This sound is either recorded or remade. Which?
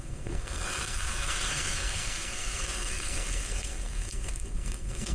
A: remade